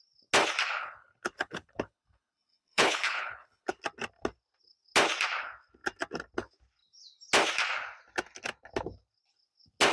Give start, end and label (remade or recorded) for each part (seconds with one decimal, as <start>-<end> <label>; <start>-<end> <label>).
0.0-0.8 recorded; 0.8-3.8 remade; 3.8-9.9 recorded